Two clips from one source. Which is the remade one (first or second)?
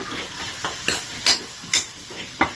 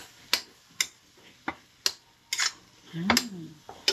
first